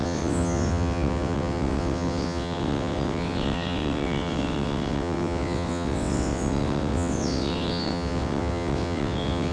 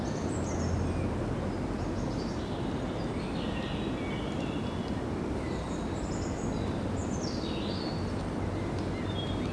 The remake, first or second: first